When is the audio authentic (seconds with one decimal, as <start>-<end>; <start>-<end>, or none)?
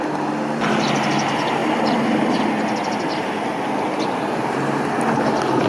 0.0-5.7